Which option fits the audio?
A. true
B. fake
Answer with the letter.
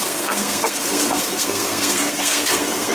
B